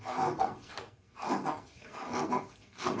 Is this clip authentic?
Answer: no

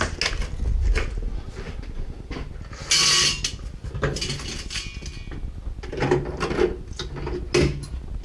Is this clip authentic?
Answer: yes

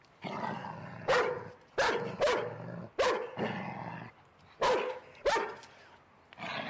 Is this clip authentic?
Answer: yes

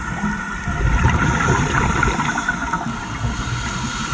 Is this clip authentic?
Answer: yes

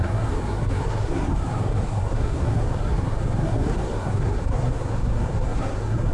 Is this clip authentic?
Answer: no